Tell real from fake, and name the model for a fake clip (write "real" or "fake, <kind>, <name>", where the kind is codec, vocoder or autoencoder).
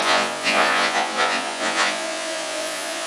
fake, vocoder, Vocos